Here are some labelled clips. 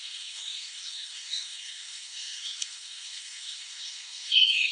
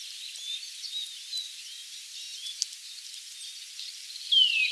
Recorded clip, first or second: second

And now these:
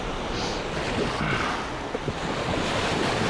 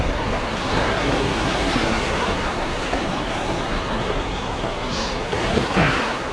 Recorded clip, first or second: first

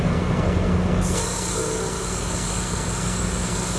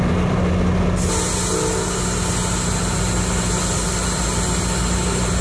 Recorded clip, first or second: second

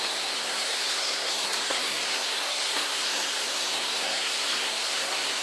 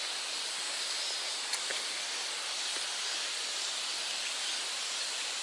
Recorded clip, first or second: second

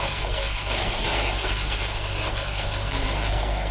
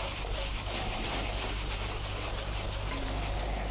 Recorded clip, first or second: second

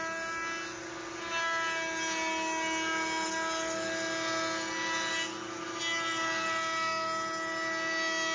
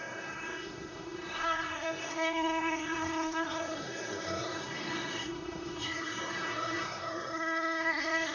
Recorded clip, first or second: first